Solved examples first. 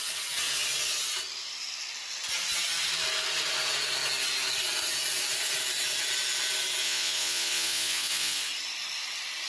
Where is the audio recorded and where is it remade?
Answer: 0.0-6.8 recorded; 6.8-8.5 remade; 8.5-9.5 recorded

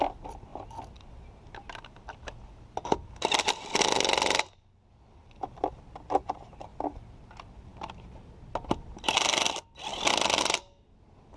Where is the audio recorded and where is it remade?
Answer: 0.0-11.4 recorded

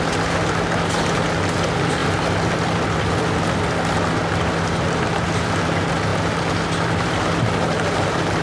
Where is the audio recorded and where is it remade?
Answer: 0.0-8.4 recorded

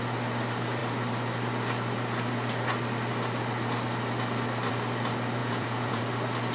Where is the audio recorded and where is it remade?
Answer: 0.0-5.4 recorded; 5.4-6.0 remade; 6.0-6.5 recorded

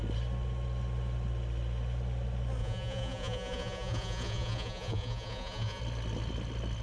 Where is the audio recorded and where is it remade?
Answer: 0.0-2.6 recorded; 2.6-5.8 remade; 5.8-6.8 recorded

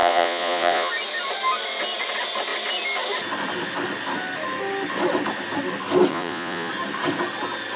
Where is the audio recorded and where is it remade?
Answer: 0.0-0.9 remade; 0.9-6.1 recorded; 6.1-6.7 remade; 6.7-7.8 recorded

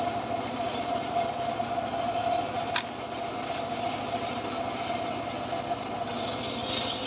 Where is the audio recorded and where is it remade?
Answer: 0.0-7.1 recorded